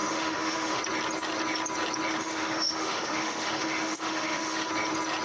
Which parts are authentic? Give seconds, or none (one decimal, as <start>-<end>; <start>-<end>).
0.8-2.2; 4.7-5.2